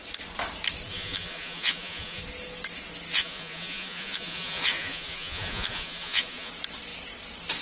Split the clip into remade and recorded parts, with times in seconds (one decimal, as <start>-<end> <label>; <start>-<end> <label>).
0.0-0.9 recorded; 0.9-2.2 remade; 2.2-3.1 recorded; 3.1-6.5 remade; 6.5-7.6 recorded